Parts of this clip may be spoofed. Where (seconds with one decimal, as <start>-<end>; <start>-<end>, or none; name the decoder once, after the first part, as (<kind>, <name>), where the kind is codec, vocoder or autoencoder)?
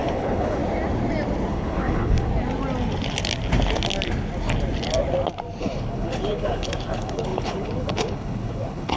0.0-0.6 (codec, HILCodec); 1.5-2.3; 5.6-9.0